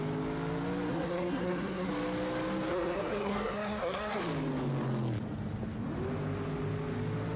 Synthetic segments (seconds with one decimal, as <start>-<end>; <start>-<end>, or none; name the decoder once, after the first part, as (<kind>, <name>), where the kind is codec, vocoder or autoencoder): 0.9-1.9 (codec, SNAC); 2.7-4.2